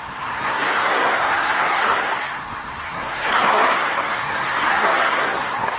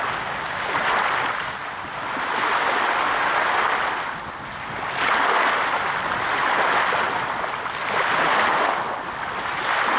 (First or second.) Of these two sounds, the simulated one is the first